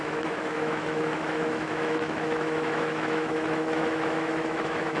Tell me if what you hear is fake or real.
fake